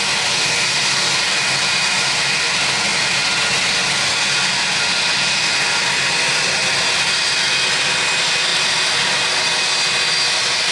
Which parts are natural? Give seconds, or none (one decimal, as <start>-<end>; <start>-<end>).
0.0-10.7